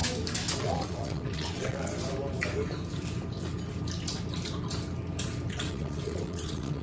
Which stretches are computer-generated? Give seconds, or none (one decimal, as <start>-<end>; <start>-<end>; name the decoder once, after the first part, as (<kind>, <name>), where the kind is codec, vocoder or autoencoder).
0.6-1.9 (vocoder, WaveNeXt); 5.5-6.8